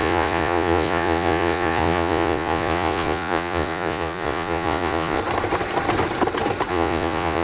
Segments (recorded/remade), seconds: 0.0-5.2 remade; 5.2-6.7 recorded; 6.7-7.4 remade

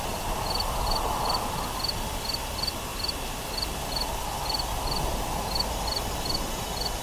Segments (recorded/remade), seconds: 0.0-7.0 recorded

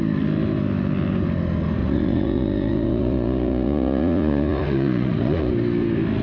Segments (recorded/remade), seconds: 0.0-1.8 recorded; 1.8-5.5 remade; 5.5-6.2 recorded